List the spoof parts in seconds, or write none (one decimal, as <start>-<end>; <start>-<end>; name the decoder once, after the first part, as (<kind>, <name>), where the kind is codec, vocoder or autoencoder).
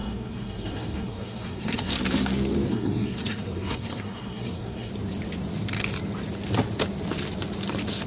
0.0-1.9 (codec, SNAC); 2.7-4.9